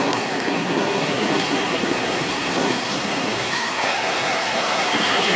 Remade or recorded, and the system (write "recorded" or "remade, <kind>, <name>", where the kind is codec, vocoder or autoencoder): remade, codec, SNAC